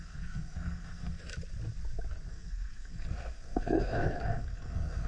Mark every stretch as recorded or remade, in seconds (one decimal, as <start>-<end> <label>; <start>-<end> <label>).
0.0-1.3 remade; 1.3-2.3 recorded; 2.3-5.1 remade